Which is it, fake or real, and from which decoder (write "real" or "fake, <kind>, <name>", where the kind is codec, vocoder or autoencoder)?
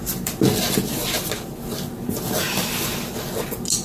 real